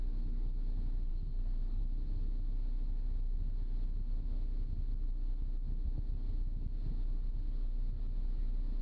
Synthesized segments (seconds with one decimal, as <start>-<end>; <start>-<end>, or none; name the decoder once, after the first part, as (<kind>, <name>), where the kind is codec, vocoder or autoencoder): 1.1-1.8 (codec, SNAC)